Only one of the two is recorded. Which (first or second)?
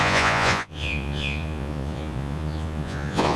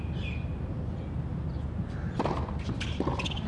second